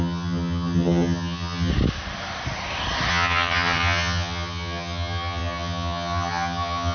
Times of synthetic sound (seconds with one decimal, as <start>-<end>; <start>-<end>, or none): 0.0-1.7; 3.1-6.9